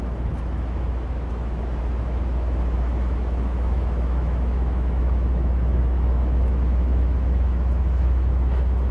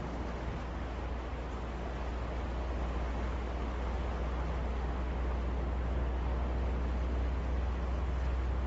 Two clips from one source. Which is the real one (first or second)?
second